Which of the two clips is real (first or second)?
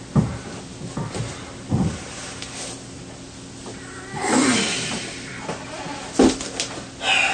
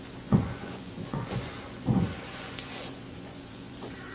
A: first